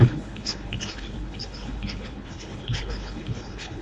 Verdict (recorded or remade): remade